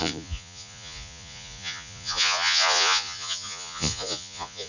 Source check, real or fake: fake